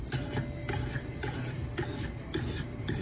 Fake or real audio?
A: real